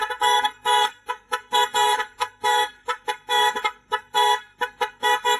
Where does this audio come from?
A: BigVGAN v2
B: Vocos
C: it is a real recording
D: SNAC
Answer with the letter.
D